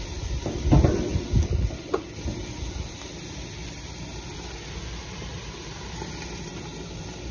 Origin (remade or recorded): recorded